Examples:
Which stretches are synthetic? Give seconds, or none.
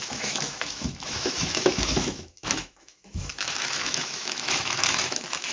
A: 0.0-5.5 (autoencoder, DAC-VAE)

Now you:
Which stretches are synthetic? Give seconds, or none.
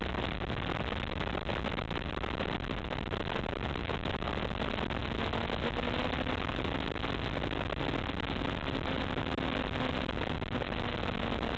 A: 3.8-4.3 (autoencoder, DAC-VAE)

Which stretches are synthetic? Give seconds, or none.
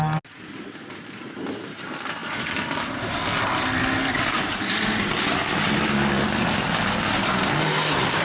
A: none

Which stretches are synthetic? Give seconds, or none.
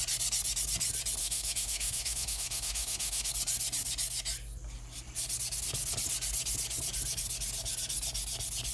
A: 1.2-3.3 (autoencoder, DAC-VAE)